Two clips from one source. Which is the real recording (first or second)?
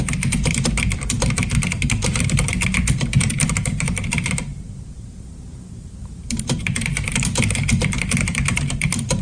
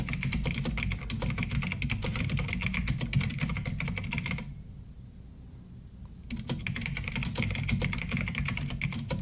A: second